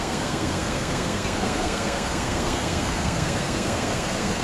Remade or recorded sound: remade